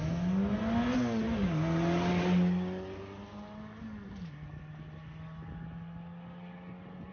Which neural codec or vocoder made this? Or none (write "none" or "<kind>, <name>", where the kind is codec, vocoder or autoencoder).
none